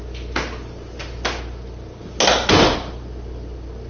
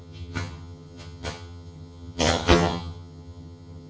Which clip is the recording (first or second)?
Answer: first